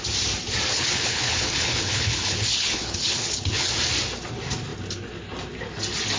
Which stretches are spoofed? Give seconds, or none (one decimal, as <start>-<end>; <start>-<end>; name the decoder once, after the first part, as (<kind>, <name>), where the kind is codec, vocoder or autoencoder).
0.7-3.7 (codec, HILCodec)